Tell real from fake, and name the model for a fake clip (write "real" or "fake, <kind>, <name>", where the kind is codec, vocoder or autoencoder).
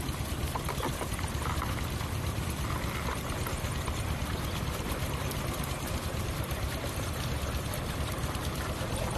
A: real